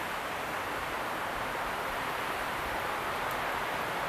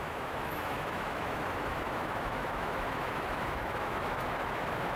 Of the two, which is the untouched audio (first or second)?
first